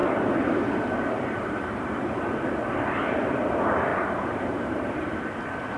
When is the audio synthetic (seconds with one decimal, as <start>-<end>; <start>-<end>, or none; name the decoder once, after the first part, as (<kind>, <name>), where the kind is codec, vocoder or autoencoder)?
0.0-2.2 (vocoder, BigVGAN v2); 3.9-5.3